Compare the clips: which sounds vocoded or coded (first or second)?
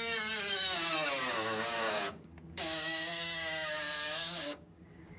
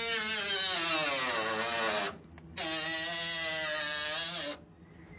first